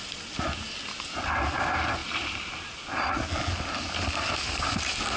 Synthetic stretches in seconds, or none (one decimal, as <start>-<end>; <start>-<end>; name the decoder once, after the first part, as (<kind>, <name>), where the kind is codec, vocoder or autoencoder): none